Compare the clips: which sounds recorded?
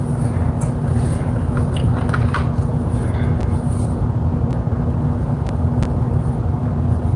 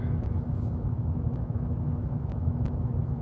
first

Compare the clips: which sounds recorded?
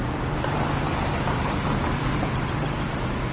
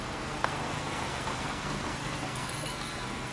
first